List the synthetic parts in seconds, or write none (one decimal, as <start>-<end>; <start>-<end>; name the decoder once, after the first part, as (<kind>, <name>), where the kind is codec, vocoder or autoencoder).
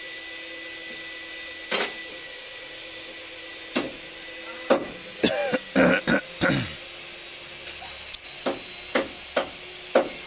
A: none